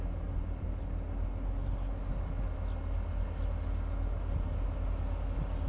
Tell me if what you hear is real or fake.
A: real